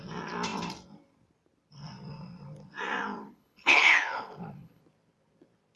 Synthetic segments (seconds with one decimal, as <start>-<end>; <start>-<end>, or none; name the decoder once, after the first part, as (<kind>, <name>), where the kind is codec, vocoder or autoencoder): 3.2-4.8 (codec, HILCodec)